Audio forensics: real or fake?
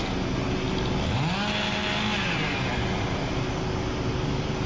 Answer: real